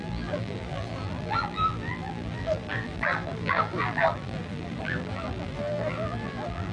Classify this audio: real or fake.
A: fake